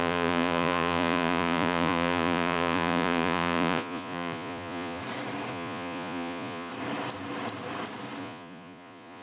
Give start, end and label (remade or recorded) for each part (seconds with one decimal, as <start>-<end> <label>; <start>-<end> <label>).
0.0-5.0 remade; 5.0-5.5 recorded; 5.5-6.7 remade; 6.7-8.2 recorded; 8.2-9.2 remade